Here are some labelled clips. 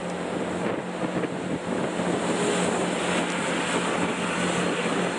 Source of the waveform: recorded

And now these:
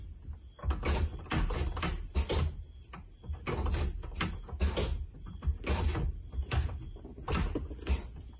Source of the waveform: recorded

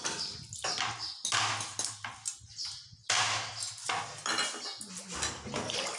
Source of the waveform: recorded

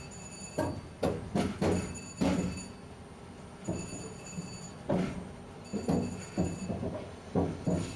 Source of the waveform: recorded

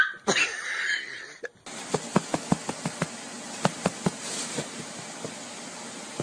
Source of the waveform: recorded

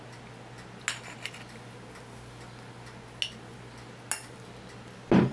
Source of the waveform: recorded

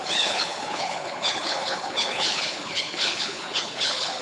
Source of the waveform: remade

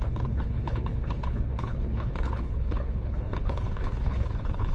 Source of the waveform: remade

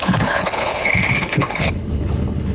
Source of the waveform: remade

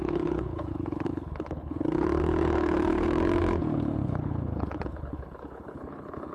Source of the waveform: remade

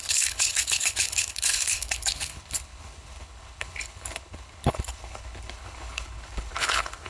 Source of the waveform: remade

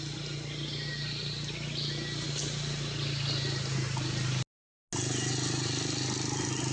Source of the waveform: recorded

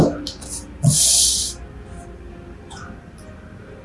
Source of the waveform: recorded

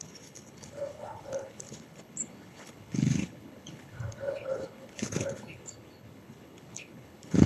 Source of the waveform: remade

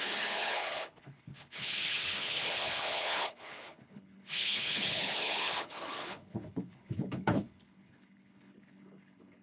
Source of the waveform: remade